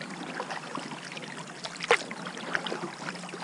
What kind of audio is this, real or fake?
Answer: real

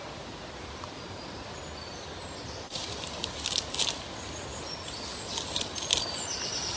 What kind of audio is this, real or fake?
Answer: real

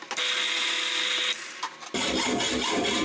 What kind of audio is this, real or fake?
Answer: real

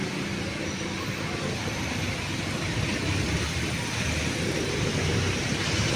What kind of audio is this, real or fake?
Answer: real